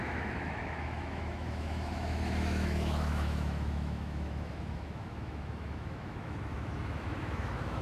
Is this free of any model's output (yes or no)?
no